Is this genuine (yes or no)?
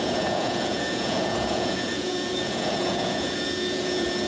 no